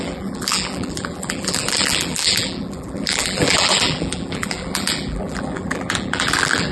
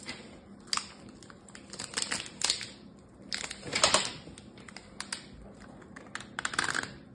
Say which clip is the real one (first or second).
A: second